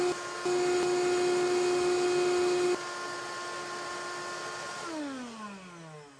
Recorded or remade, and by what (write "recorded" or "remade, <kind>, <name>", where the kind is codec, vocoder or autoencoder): recorded